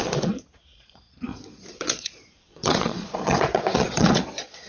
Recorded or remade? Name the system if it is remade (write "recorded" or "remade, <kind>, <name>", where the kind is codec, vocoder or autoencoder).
remade, vocoder, Vocos